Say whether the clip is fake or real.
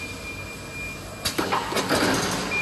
real